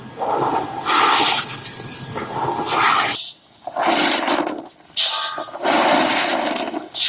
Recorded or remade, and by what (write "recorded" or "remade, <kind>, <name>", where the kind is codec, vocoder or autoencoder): recorded